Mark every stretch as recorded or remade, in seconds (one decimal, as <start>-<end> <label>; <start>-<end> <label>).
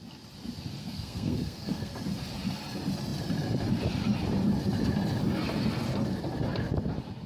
0.0-0.8 recorded; 0.8-1.9 remade; 1.9-7.3 recorded